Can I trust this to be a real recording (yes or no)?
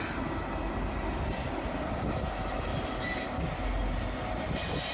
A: yes